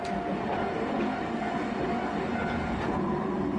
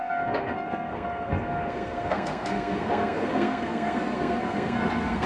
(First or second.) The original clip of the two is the first